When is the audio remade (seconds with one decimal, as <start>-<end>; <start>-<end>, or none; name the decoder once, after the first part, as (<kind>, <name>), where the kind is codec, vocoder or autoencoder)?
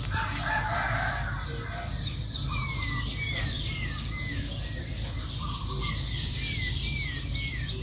none